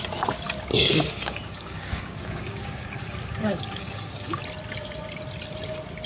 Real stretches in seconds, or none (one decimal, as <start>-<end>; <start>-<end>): 0.0-0.7; 4.4-6.1